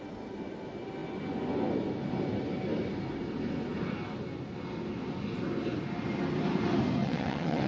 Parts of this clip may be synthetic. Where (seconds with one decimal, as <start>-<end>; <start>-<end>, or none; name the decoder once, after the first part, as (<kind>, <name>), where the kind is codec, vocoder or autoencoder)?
7.0-7.7 (vocoder, WaveNeXt)